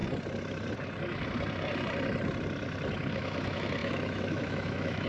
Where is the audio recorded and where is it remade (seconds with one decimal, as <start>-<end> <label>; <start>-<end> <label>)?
0.0-3.1 recorded; 3.1-5.1 remade